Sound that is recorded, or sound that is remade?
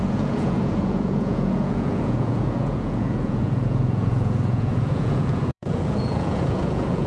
remade